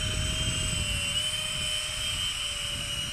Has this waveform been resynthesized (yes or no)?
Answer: no